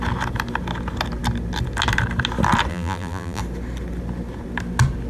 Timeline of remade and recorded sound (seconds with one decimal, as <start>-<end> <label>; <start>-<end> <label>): 0.0-2.7 recorded; 2.7-3.4 remade; 3.4-5.1 recorded